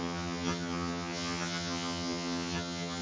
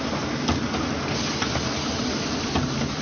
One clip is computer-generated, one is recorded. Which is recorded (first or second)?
second